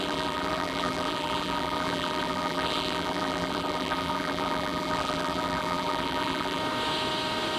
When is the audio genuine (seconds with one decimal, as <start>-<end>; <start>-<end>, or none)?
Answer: 6.6-7.6

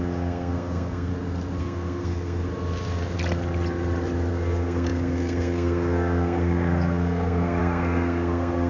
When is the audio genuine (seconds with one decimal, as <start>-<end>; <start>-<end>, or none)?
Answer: 1.1-1.6; 2.5-4.3

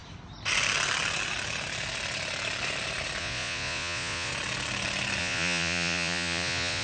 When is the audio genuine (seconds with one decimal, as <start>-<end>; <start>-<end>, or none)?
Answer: 0.0-3.2; 4.3-5.2